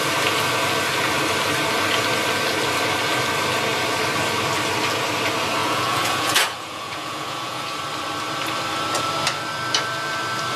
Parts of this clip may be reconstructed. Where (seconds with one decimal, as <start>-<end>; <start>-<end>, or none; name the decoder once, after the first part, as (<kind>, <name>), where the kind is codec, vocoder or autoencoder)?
5.6-7.6 (vocoder, Vocos)